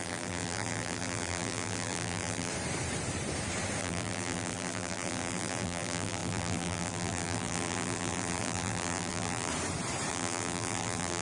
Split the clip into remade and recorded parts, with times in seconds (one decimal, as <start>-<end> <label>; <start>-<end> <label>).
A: 0.0-2.5 remade; 2.5-3.8 recorded; 3.8-9.5 remade; 9.5-10.1 recorded; 10.1-11.2 remade